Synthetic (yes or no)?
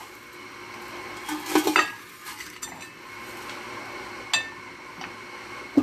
no